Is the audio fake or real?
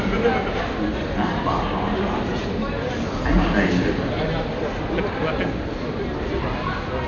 real